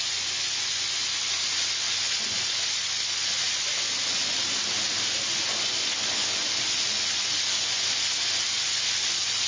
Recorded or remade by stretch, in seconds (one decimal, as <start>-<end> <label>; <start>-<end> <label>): 0.0-4.4 remade; 4.4-5.3 recorded; 5.3-9.5 remade